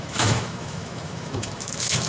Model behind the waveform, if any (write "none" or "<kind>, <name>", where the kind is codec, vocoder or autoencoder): autoencoder, DAC-VAE